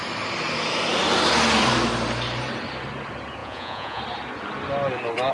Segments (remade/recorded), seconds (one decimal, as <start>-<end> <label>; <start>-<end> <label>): 0.0-3.4 recorded; 3.4-4.0 remade; 4.0-5.3 recorded